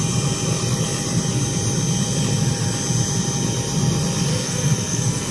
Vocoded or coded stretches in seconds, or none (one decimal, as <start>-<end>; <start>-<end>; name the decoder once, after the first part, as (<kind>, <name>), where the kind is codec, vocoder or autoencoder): 4.3-5.3 (codec, SNAC)